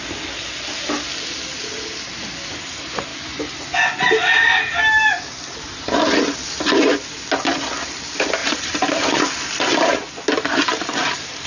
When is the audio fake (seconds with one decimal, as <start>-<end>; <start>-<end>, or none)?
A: 8.4-8.9